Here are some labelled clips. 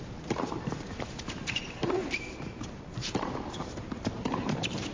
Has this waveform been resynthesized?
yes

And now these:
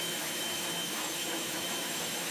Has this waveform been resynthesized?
yes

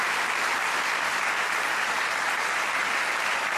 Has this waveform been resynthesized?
no